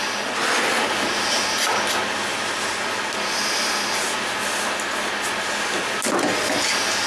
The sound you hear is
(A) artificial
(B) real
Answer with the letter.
B